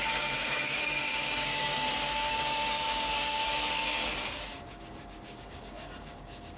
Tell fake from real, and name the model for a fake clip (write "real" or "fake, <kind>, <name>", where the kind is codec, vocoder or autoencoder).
fake, codec, DAC